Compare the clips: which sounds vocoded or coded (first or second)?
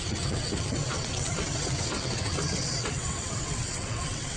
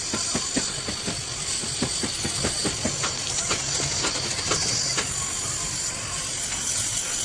first